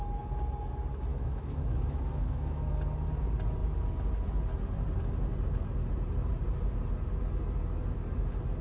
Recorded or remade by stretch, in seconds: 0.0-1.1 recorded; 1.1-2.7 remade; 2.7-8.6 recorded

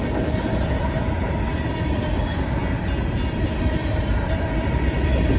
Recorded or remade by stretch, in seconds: 0.0-3.8 recorded; 3.8-4.9 remade; 4.9-5.4 recorded

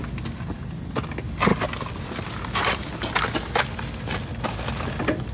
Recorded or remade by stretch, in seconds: 0.0-5.3 recorded

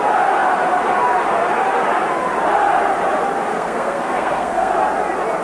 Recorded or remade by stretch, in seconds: 0.0-3.5 recorded; 3.5-4.7 remade; 4.7-5.4 recorded

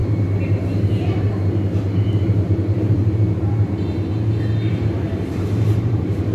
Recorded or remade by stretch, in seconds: 0.0-3.0 remade; 3.0-4.7 recorded; 4.7-6.3 remade

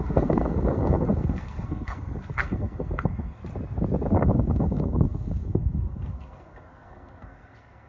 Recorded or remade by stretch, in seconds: 0.0-3.4 remade; 3.4-4.1 recorded; 4.1-7.9 remade

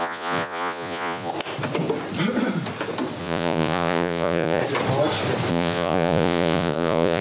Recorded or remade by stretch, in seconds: 0.0-1.3 remade; 1.3-3.2 recorded; 3.2-4.6 remade; 4.6-5.5 recorded; 5.5-7.2 remade

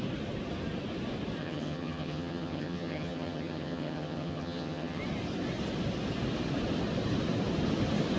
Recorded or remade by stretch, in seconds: 0.0-1.4 recorded; 1.4-5.0 remade; 5.0-8.2 recorded